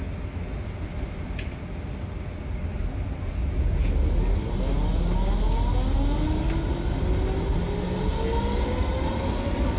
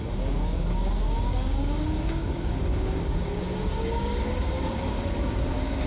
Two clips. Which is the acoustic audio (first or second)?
first